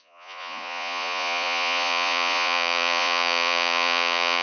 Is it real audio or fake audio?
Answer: fake